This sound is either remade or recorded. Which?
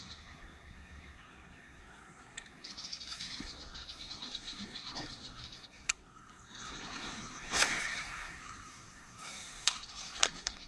remade